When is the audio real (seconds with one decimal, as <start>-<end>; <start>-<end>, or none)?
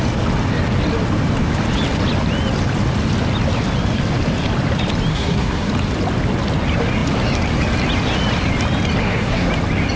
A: 0.0-5.1; 5.7-9.0; 9.5-10.0